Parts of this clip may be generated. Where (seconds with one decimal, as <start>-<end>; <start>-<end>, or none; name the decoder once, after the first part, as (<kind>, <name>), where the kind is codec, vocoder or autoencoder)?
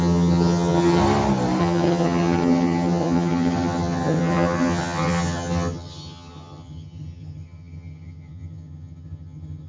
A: 0.0-1.0 (vocoder, HiFi-GAN); 1.6-9.7